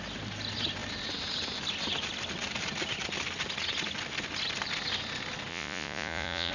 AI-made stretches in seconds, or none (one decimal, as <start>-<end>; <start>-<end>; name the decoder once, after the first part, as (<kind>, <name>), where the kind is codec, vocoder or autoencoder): 5.5-6.5 (vocoder, Vocos)